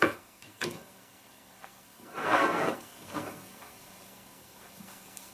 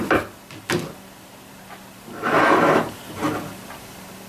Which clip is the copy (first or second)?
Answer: first